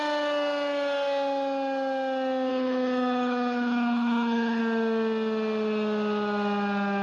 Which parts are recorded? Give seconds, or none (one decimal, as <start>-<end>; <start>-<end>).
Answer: 0.0-2.5; 4.6-7.0